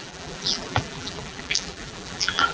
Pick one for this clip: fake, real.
fake